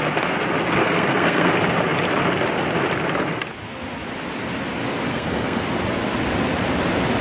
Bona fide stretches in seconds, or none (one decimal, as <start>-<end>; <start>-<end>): 0.0-0.8; 1.5-5.1; 5.6-7.2